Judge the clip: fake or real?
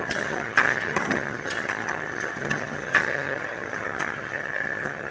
fake